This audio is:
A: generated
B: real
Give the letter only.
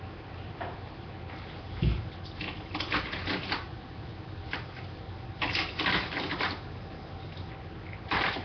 B